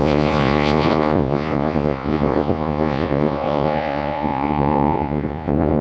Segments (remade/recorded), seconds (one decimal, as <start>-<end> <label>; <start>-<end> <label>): 0.0-5.8 remade

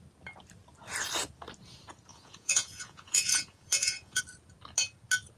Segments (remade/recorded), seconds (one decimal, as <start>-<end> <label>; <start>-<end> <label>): 0.0-2.1 recorded; 2.1-4.2 remade; 4.2-5.4 recorded

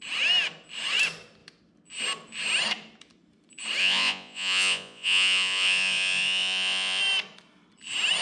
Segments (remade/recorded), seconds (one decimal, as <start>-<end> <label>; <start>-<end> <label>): 0.0-3.8 recorded; 3.8-7.0 remade; 7.0-8.2 recorded

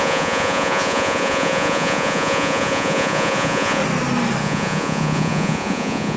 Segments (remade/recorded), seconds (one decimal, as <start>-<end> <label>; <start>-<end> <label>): 0.0-3.8 remade; 3.8-4.4 recorded; 4.4-6.2 remade

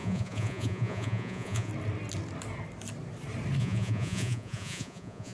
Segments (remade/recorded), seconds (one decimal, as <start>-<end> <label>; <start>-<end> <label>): 0.0-1.7 remade; 1.7-3.6 recorded; 3.6-5.3 remade

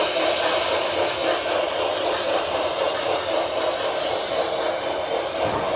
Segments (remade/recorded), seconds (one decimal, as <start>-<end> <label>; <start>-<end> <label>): 0.0-5.8 recorded

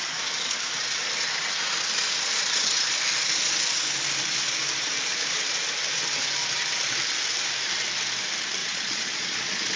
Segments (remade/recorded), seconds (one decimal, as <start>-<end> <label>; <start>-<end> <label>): 0.0-8.6 recorded; 8.6-9.8 remade

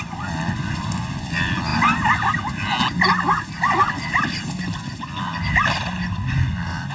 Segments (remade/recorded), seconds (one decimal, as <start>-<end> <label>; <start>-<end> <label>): 0.0-6.9 recorded